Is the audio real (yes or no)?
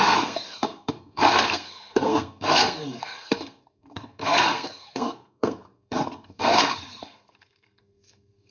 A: no